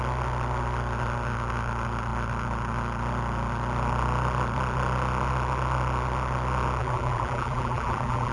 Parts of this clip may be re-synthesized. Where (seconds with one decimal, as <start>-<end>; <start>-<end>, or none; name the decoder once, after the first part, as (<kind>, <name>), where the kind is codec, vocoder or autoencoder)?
6.8-8.3 (vocoder, BigVGAN v2)